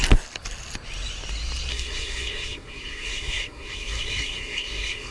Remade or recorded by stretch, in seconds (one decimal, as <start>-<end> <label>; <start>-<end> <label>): 0.0-1.7 recorded; 1.7-5.1 remade